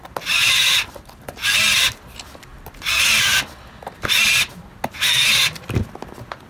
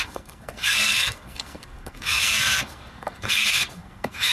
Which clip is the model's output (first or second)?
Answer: second